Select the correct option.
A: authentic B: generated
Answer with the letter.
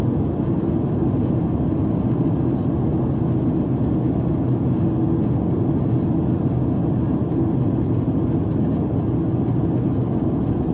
A